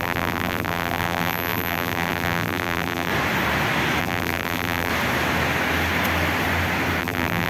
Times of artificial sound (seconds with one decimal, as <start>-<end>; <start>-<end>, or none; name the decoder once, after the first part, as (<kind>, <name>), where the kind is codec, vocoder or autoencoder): 0.0-3.1 (vocoder, BigVGAN v2); 4.0-4.9; 7.0-7.5